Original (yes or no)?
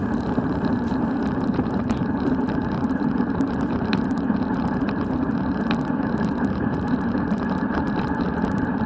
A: no